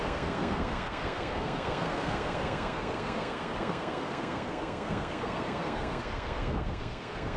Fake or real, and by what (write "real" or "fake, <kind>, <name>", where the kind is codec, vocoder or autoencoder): fake, codec, SNAC